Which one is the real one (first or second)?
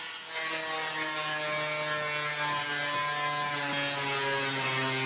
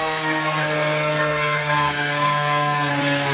first